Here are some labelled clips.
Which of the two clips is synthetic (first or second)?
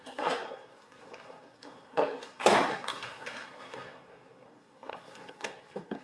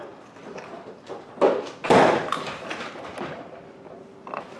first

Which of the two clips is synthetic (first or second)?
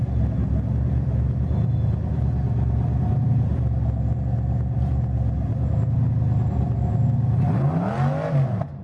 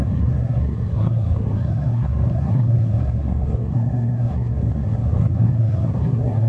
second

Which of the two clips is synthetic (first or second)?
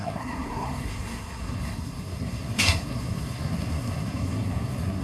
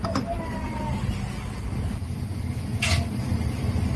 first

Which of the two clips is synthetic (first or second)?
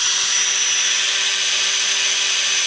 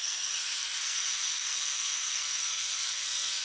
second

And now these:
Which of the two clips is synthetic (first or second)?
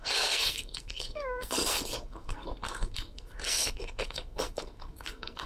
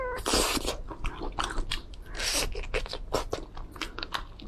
first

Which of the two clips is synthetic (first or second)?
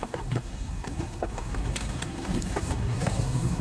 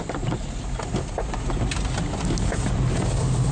first